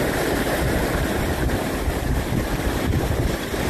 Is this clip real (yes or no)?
no